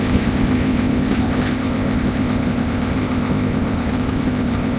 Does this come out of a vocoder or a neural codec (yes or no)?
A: yes